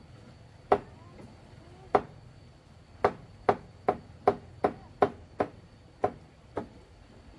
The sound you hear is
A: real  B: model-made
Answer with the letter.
A